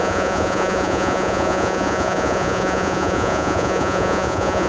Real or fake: fake